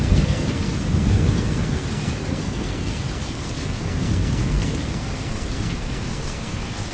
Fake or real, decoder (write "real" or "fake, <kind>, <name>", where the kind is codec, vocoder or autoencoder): fake, codec, SNAC